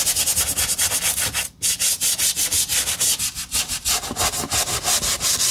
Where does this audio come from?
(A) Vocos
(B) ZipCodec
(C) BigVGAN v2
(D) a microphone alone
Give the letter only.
D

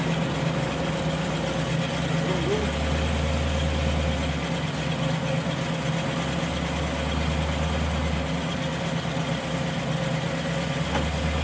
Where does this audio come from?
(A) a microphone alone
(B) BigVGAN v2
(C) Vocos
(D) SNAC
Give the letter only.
A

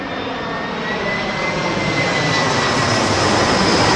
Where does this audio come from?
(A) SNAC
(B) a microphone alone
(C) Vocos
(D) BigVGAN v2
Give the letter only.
B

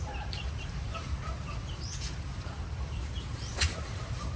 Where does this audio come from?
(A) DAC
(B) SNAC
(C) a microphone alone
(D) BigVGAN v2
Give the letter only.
D